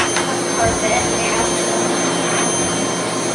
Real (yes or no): yes